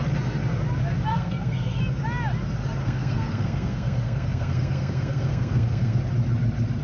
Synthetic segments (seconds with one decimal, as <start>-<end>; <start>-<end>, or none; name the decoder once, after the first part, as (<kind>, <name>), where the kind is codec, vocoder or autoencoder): 1.1-1.8 (codec, SNAC); 2.8-6.0